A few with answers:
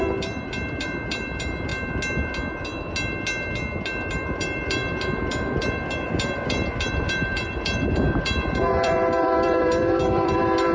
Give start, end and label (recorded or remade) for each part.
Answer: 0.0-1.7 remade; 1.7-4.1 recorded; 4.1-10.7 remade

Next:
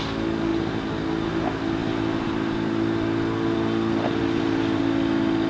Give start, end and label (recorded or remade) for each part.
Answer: 0.0-0.5 recorded; 0.5-1.3 remade; 1.3-1.8 recorded; 1.8-4.8 remade; 4.8-5.5 recorded

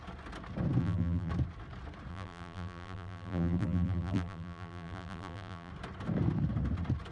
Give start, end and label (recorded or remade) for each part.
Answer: 0.0-0.8 recorded; 0.8-1.3 remade; 1.3-2.1 recorded; 2.1-5.7 remade; 5.7-7.1 recorded

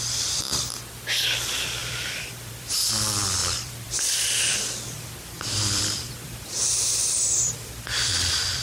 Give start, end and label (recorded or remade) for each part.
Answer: 0.0-1.8 recorded; 1.8-2.7 remade; 2.7-3.4 recorded; 3.4-8.6 remade

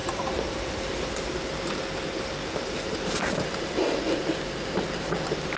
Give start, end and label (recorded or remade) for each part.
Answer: 0.0-1.1 remade; 1.1-2.4 recorded; 2.4-5.6 remade

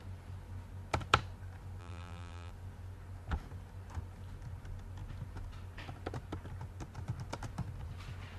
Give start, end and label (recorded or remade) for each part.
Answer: 0.0-1.8 recorded; 1.8-2.5 remade; 2.5-8.4 recorded